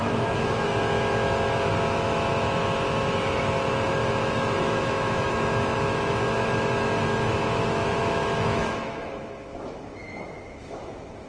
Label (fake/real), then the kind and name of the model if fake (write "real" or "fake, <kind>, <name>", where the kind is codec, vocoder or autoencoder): fake, autoencoder, DAC-VAE